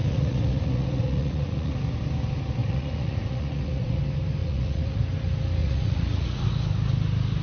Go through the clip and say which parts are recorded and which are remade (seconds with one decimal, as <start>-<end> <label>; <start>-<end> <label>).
0.0-1.7 remade; 1.7-2.6 recorded; 2.6-4.0 remade; 4.0-4.4 recorded; 4.4-5.0 remade; 5.0-5.6 recorded; 5.6-6.5 remade; 6.5-7.4 recorded